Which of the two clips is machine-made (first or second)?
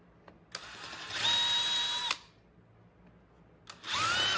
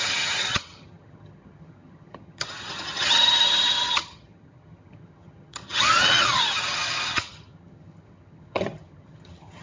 second